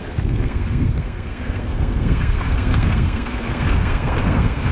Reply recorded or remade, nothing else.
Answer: remade